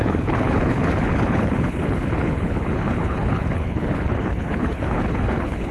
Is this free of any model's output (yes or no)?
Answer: no